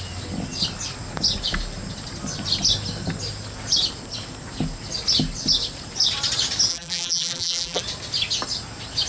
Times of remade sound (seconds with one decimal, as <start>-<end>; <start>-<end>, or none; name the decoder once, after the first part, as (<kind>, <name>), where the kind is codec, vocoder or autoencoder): 6.7-7.8 (vocoder, BigVGAN v2)